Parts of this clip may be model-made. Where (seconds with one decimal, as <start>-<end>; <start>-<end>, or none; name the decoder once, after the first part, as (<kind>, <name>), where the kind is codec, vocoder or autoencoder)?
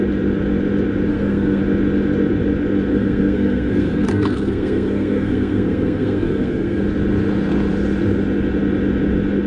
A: 1.1-1.6 (codec, SNAC); 2.9-6.8